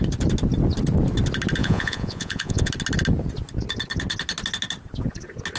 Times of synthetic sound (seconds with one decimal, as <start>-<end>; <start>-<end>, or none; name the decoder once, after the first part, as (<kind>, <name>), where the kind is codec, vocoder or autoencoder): 1.6-2.7 (vocoder, Vocos)